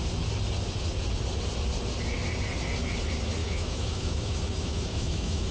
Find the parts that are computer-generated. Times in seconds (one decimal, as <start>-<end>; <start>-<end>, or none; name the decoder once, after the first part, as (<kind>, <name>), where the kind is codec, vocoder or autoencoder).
3.4-5.5 (autoencoder, DAC-VAE)